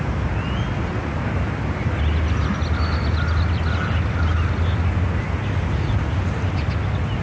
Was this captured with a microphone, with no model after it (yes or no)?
yes